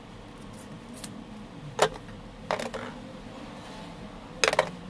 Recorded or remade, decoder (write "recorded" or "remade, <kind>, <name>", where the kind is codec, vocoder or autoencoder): recorded